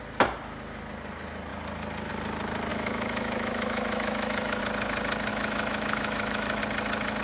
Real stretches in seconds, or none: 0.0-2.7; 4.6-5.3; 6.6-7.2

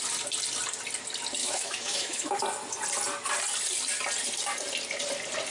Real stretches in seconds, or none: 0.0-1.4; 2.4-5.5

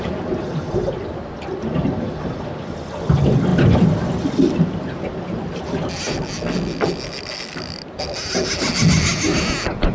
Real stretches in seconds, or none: 0.0-9.9

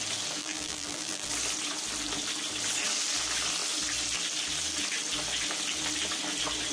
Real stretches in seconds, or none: 0.0-0.4; 1.3-6.7

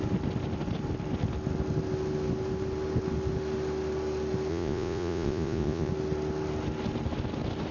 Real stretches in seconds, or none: 0.0-4.5; 5.9-7.7

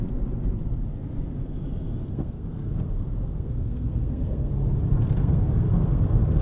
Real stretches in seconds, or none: 0.0-2.0; 4.5-5.2; 6.0-6.4